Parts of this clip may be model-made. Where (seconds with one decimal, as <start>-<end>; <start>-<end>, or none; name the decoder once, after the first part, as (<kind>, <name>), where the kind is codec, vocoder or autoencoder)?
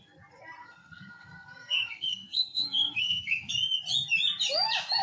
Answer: 0.6-3.5 (codec, SNAC)